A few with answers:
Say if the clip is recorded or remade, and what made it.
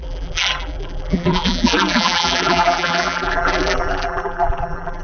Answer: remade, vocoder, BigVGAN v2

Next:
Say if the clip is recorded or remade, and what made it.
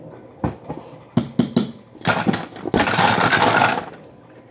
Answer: recorded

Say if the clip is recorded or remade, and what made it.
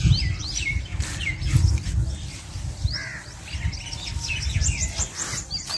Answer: recorded